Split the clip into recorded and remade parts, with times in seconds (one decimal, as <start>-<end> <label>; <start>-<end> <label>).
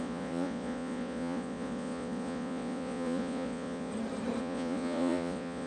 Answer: 0.0-3.9 remade; 3.9-4.4 recorded; 4.4-5.7 remade